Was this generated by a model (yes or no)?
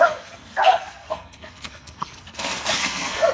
yes